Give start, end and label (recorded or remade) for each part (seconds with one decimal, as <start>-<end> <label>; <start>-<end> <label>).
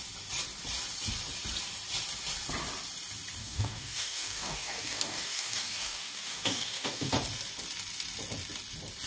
0.0-3.4 recorded; 3.4-7.1 remade; 7.1-9.1 recorded